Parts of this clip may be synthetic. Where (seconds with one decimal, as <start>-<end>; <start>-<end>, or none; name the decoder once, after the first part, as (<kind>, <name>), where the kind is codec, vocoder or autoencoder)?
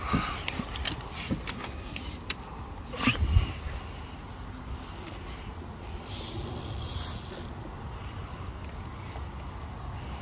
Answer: 1.5-2.0 (codec, SNAC)